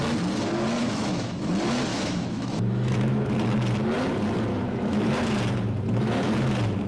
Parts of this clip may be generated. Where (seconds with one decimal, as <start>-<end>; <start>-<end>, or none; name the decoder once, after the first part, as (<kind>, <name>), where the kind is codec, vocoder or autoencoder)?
0.8-1.5 (autoencoder, DAC-VAE); 1.9-3.3; 4.5-5.1